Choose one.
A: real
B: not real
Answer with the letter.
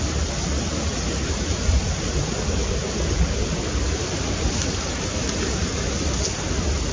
A